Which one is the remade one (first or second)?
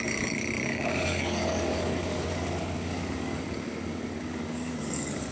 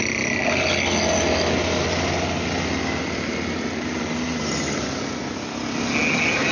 first